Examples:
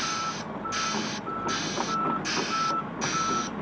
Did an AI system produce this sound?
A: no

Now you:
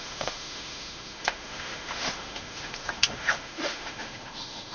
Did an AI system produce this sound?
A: yes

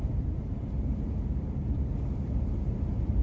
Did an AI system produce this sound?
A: yes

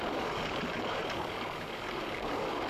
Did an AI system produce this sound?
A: yes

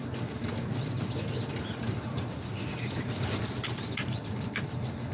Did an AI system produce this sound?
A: yes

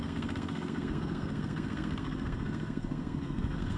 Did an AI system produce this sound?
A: yes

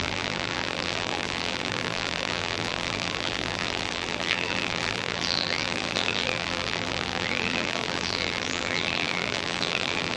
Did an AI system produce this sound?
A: yes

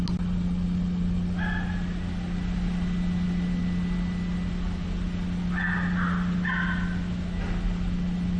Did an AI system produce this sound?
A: no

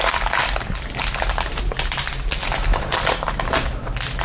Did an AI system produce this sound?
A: no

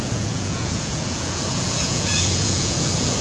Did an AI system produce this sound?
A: yes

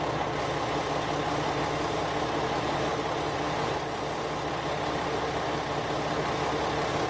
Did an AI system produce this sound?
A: no